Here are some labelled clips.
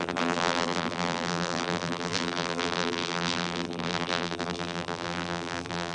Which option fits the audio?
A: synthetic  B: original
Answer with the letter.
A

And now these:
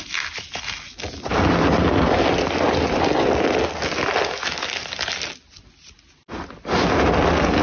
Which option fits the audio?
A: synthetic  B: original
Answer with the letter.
B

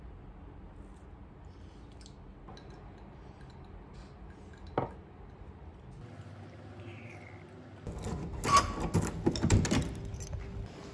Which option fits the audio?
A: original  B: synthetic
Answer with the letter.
A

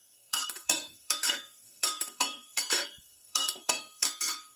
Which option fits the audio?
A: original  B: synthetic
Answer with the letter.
B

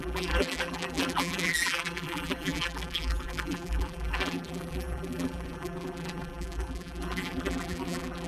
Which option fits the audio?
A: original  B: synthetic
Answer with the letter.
B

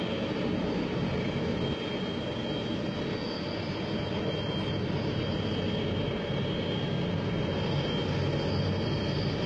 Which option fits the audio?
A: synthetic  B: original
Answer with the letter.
B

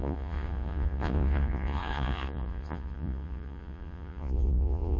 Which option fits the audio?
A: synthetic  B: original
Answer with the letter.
A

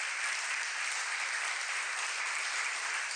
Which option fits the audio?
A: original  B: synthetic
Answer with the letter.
B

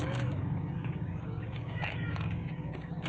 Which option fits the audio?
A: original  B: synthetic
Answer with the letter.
B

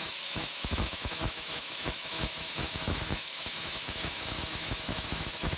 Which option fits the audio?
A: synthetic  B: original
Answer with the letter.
A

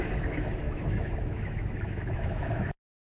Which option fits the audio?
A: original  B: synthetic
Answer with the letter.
B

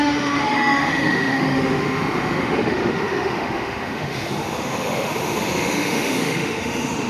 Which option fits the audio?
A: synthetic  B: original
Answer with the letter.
A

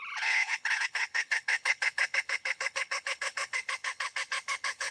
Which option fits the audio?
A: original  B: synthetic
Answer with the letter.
B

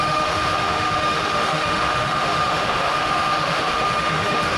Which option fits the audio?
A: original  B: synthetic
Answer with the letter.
B